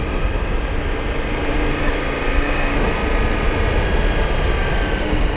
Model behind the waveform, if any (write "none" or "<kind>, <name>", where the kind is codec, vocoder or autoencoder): none